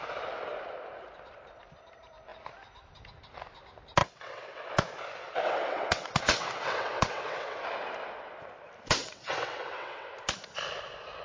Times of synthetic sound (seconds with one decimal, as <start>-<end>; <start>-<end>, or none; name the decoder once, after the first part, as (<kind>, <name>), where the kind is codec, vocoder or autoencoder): 4.0-4.7 (vocoder, WaveNeXt); 5.2-7.6; 9.0-10.1